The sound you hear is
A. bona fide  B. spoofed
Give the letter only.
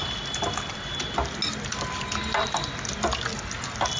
A